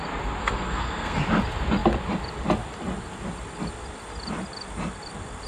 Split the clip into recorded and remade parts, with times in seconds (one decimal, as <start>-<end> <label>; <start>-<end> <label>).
0.0-0.4 recorded; 0.4-1.2 remade; 1.2-5.5 recorded